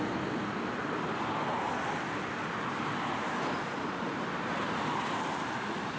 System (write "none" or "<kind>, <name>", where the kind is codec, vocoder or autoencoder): none